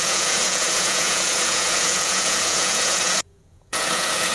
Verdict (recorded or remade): remade